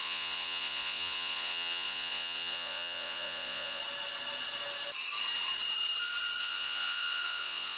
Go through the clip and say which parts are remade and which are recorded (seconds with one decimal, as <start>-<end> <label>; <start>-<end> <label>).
0.0-3.8 remade; 3.8-6.4 recorded; 6.4-7.8 remade